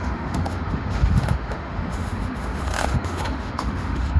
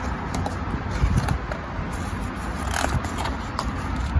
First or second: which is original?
second